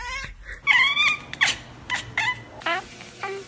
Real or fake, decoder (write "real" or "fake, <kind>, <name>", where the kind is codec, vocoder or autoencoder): real